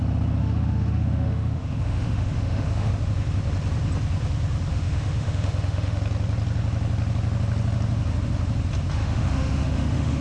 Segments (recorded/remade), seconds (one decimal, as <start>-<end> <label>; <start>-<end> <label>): 0.0-0.4 recorded; 0.4-2.9 remade; 2.9-4.7 recorded; 4.7-6.0 remade; 6.0-9.0 recorded; 9.0-10.2 remade